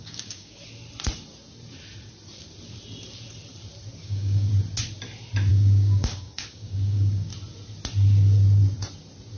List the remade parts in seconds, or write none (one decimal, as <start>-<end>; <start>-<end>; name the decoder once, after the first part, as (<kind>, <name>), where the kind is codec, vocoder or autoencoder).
0.0-0.6 (codec, DAC); 4.0-4.5; 5.5-7.3